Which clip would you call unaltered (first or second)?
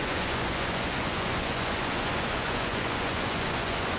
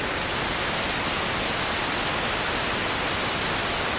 second